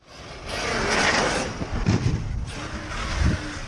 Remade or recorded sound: recorded